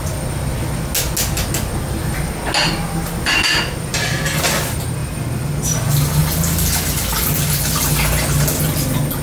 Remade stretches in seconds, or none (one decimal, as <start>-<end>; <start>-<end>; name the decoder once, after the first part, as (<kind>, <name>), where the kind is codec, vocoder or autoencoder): none

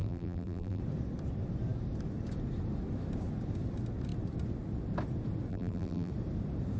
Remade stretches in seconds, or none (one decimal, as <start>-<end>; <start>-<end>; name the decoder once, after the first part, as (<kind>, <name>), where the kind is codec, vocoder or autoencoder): 0.0-0.8 (vocoder, BigVGAN v2); 5.5-6.1

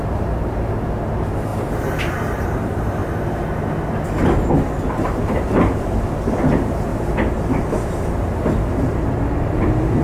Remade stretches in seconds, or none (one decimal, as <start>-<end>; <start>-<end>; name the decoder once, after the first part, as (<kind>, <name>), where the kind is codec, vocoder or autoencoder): 0.0-3.0 (vocoder, BigVGAN v2); 5.0-6.9; 8.8-10.0